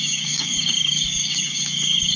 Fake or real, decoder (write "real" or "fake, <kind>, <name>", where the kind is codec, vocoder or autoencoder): fake, codec, DAC